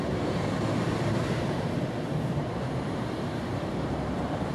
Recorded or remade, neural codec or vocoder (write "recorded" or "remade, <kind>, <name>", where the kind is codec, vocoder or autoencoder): remade, vocoder, BigVGAN v2